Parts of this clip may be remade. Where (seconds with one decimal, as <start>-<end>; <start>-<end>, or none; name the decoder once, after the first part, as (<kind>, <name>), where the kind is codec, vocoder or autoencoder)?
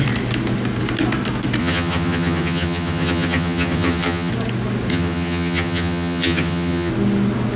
1.6-4.3 (vocoder, HiFi-GAN); 4.9-6.9